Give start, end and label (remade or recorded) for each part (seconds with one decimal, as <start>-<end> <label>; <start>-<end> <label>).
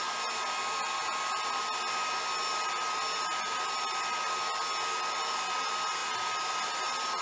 0.0-7.2 recorded